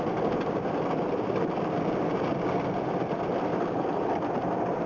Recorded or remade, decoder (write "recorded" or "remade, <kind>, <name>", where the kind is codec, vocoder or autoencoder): remade, vocoder, BigVGAN v2